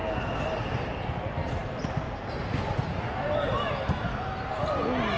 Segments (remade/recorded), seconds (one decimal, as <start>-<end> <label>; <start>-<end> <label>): 0.0-5.2 recorded